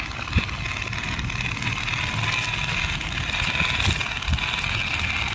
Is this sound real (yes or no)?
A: yes